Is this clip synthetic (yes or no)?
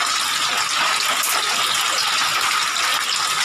no